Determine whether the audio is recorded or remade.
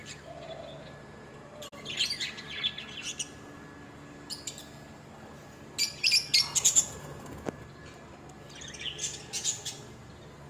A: recorded